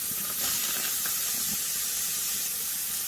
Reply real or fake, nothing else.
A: real